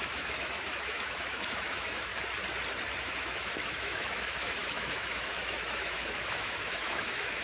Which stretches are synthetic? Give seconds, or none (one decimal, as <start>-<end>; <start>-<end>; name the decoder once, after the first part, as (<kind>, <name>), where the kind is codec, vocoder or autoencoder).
0.0-2.1 (autoencoder, DAC-VAE); 3.0-7.4